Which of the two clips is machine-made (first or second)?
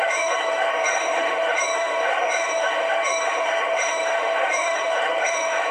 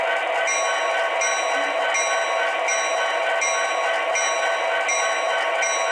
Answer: first